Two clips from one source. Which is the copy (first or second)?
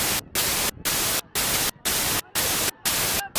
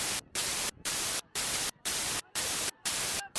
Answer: second